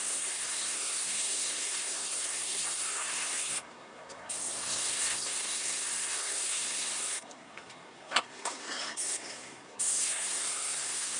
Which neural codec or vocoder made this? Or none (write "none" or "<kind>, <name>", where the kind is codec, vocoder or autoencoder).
codec, SNAC